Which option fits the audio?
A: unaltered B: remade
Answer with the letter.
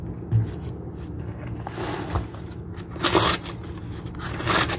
A